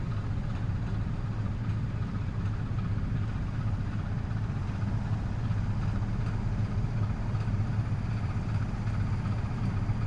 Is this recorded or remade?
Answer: recorded